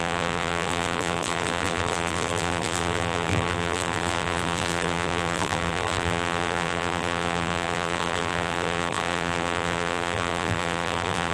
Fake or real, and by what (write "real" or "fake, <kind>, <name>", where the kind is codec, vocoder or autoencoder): fake, vocoder, BigVGAN v2